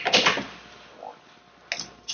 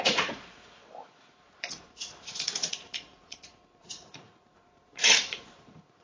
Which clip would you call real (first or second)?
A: first